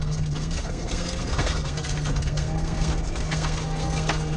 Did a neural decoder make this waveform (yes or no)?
yes